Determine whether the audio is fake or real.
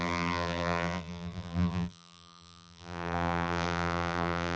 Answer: fake